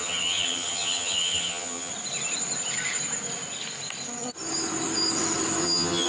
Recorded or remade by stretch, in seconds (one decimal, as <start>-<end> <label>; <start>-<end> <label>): 0.0-1.9 remade; 1.9-5.6 recorded; 5.6-6.1 remade